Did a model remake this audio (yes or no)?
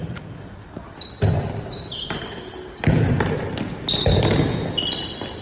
no